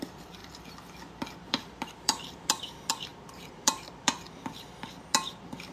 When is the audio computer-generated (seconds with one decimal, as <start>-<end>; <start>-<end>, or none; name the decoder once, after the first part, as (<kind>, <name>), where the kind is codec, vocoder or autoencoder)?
0.0-5.7 (vocoder, BigVGAN v2)